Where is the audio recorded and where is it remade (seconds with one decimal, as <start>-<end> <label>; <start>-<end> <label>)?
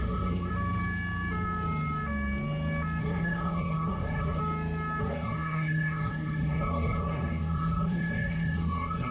0.0-0.5 remade; 0.5-3.0 recorded; 3.0-4.4 remade; 4.4-5.0 recorded; 5.0-9.1 remade